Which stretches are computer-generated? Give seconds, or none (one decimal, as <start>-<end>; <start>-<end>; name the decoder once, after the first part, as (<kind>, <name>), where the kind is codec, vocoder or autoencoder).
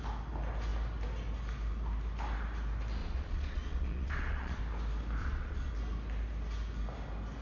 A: 3.0-4.6 (vocoder, Vocos); 5.2-5.7